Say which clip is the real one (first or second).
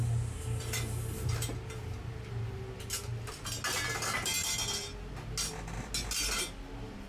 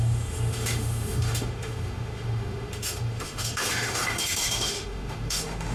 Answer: first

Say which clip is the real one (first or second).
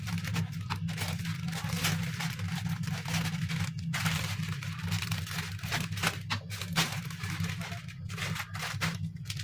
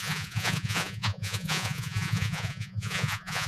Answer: first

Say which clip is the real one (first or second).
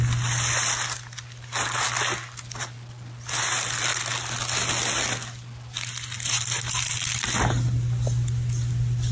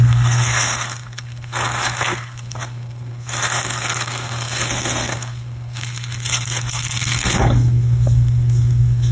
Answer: first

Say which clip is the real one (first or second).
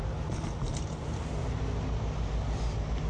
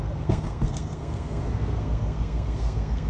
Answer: first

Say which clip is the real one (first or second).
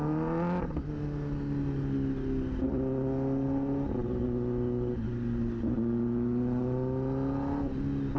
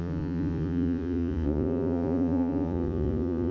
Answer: first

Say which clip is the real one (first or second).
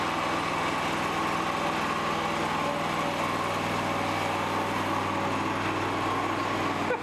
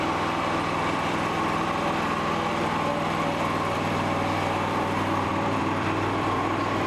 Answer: first